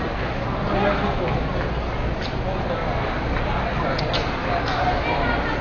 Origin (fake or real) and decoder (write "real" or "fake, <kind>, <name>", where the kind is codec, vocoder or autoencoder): real